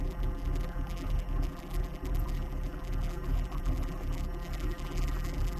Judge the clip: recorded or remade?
remade